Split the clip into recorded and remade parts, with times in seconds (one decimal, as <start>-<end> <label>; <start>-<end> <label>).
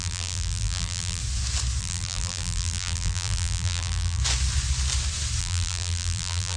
0.0-1.2 remade; 1.2-1.8 recorded; 1.8-4.2 remade; 4.2-5.4 recorded; 5.4-6.6 remade